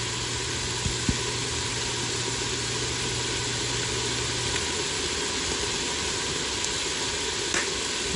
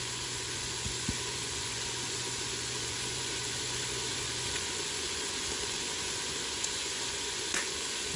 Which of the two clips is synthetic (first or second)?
second